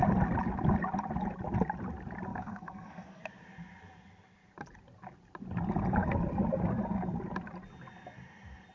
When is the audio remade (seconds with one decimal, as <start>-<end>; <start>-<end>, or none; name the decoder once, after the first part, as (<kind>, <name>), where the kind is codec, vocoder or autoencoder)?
2.3-3.2 (codec, SNAC)